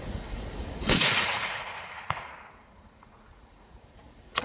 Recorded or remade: remade